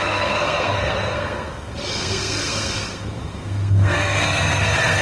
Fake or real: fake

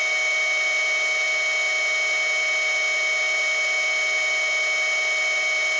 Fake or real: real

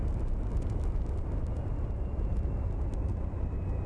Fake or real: real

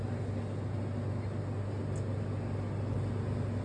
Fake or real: real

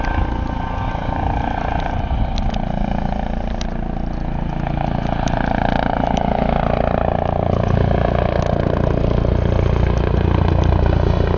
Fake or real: real